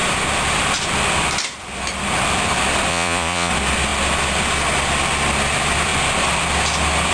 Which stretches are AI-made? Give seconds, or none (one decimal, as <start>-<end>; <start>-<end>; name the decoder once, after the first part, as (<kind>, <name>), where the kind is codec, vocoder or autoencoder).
2.9-3.5 (vocoder, Vocos)

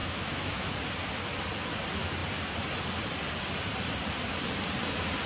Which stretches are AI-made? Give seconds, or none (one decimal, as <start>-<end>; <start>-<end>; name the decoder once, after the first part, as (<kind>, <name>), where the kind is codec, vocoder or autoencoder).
0.0-0.7 (autoencoder, DAC-VAE)

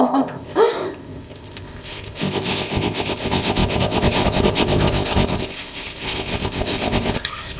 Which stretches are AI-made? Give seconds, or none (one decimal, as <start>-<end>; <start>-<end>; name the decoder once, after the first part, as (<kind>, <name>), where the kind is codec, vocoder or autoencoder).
0.0-7.6 (codec, ZipCodec)

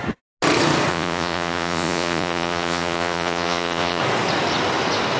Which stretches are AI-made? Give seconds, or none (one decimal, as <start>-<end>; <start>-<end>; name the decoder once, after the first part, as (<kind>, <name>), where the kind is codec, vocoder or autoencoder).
0.9-4.0 (vocoder, Vocos)